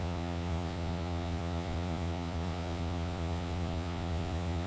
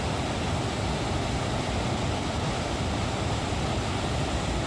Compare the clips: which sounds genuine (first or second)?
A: second